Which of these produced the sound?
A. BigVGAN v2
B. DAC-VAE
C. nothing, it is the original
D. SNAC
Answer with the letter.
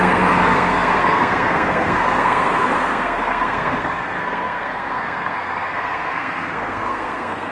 D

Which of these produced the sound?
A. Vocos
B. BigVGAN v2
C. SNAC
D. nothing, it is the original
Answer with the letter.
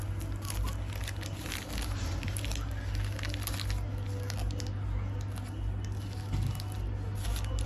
D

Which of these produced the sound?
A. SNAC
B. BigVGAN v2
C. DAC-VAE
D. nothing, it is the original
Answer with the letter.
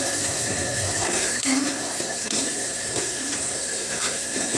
A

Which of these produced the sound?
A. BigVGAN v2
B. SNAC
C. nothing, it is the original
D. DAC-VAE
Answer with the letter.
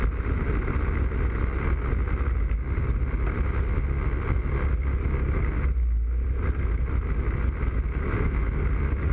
C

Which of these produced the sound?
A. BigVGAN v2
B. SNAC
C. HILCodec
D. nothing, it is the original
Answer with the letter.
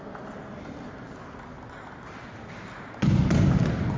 D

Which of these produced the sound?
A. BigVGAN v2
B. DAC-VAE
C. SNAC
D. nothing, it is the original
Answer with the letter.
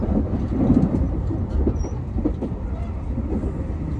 D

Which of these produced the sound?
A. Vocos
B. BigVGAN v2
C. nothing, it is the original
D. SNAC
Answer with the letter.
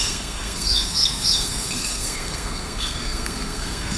D